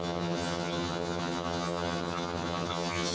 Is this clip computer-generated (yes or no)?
yes